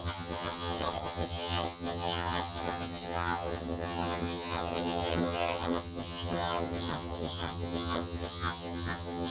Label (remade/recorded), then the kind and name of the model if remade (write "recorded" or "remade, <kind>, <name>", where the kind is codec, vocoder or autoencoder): remade, vocoder, HiFi-GAN